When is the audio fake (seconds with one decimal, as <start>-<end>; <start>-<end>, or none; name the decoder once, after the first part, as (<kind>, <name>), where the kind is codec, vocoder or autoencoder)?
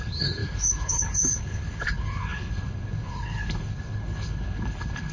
0.0-5.1 (codec, HILCodec)